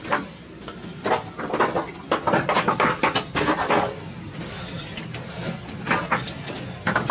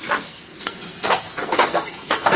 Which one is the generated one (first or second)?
second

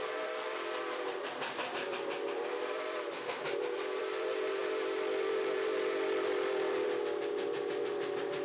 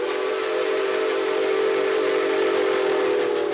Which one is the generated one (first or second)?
first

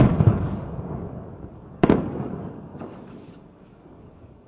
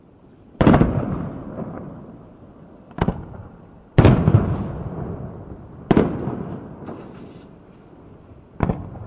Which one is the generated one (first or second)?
first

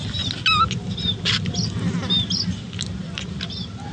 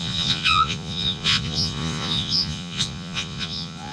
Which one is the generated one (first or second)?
second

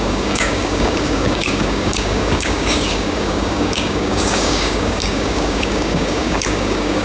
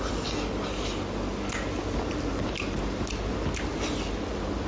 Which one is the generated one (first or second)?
first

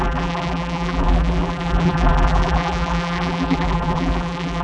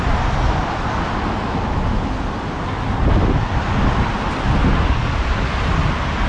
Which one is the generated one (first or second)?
first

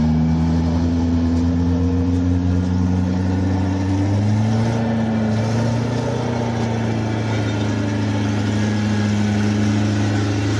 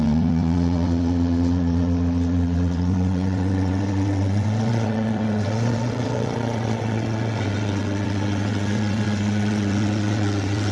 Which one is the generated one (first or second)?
second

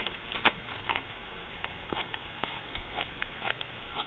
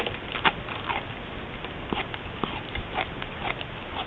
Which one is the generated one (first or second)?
first